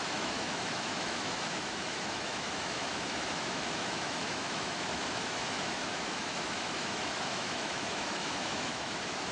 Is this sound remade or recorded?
remade